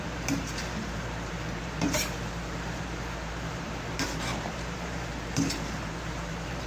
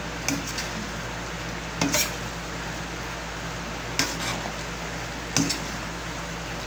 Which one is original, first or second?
second